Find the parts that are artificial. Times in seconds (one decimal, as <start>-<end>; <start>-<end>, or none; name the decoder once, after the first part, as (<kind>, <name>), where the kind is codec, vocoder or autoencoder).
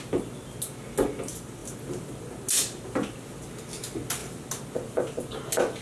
none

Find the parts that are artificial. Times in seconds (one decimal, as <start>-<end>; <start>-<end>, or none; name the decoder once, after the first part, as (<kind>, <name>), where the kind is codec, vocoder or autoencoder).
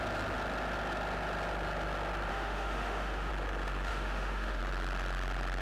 2.3-3.3 (autoencoder, DAC-VAE); 3.9-4.6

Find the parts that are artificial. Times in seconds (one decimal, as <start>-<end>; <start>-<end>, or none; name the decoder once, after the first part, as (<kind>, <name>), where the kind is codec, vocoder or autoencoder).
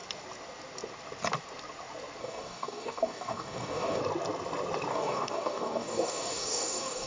2.2-4.0 (codec, DAC); 4.9-7.1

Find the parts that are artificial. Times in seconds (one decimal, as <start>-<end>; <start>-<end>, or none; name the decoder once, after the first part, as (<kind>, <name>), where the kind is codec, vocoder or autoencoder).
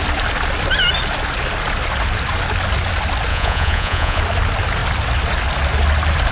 3.3-4.2 (vocoder, Vocos)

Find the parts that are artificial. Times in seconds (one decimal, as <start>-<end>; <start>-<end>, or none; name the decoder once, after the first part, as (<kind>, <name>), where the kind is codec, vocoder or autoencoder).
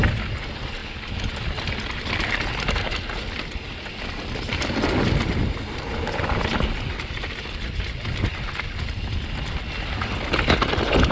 none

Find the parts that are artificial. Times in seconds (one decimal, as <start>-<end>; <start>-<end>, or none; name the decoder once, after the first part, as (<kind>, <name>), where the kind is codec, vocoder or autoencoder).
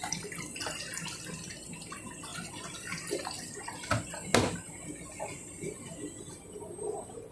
none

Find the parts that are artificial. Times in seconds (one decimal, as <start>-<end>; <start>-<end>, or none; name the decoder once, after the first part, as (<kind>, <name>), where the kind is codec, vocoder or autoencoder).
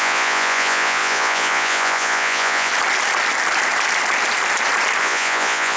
0.0-2.7 (vocoder, Vocos); 5.0-5.8